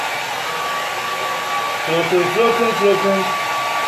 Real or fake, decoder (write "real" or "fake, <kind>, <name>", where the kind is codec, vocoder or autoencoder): real